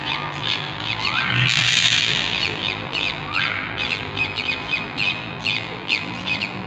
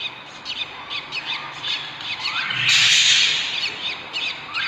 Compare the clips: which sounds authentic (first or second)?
second